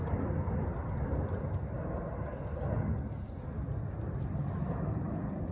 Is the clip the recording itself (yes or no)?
yes